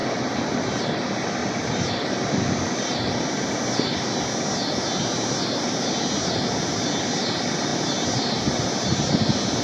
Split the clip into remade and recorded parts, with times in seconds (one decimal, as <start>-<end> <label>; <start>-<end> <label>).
0.0-0.6 remade; 0.6-1.4 recorded; 1.4-3.4 remade; 3.4-9.6 recorded